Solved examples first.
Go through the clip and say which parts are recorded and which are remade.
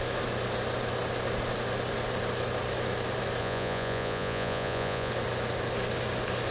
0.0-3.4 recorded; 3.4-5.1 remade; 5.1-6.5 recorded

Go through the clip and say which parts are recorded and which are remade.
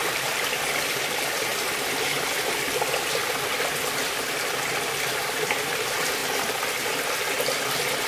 0.0-6.2 remade; 6.2-8.1 recorded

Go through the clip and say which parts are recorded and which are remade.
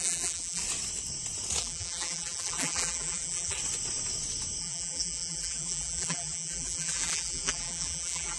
0.0-0.6 remade; 0.6-1.6 recorded; 1.6-3.6 remade; 3.6-4.6 recorded; 4.6-8.4 remade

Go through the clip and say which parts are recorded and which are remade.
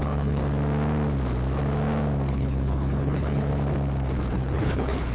0.0-0.4 remade; 0.4-2.3 recorded; 2.3-3.5 remade; 3.5-4.3 recorded; 4.3-5.1 remade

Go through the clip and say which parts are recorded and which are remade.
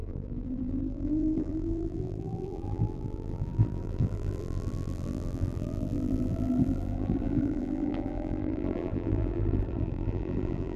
0.0-10.8 remade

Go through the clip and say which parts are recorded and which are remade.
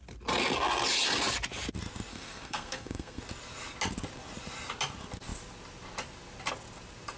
0.0-2.1 recorded; 2.1-3.2 remade; 3.2-7.2 recorded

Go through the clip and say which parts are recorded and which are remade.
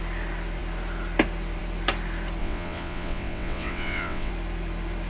0.0-2.4 recorded; 2.4-4.3 remade; 4.3-5.1 recorded